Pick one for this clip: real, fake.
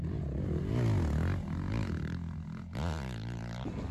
real